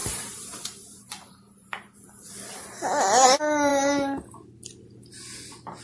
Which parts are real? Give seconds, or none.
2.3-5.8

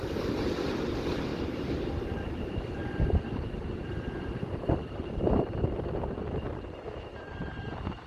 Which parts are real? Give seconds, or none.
0.0-1.3; 3.5-7.1

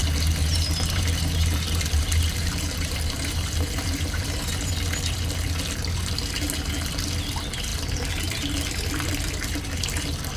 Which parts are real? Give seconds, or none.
4.7-10.4